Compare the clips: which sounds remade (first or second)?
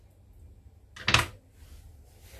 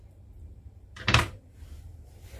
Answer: second